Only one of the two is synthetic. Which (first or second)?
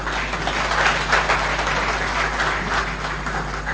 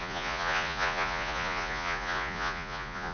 second